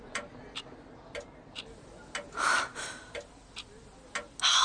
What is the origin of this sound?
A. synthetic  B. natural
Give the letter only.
B